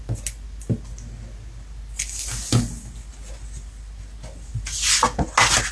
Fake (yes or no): no